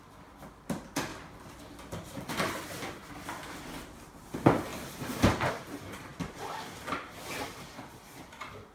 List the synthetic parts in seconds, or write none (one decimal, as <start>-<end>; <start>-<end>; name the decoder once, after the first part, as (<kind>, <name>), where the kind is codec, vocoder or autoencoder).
3.0-3.7 (vocoder, BigVGAN v2); 4.7-5.5; 6.1-8.7